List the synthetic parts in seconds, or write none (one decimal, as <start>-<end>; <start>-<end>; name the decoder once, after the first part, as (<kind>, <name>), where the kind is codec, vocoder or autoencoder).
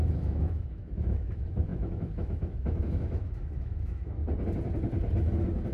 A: 0.0-4.2 (autoencoder, DAC-VAE)